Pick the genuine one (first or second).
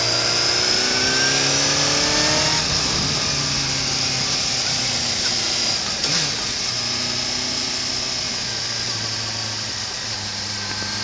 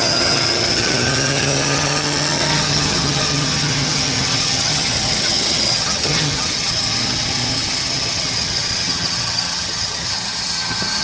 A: first